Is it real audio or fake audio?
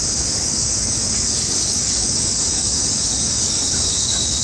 fake